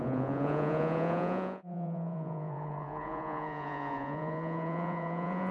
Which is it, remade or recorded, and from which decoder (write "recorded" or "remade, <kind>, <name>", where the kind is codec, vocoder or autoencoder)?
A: remade, vocoder, Vocos